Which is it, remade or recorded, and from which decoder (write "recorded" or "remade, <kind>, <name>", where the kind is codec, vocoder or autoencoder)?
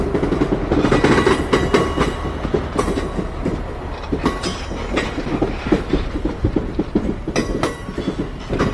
recorded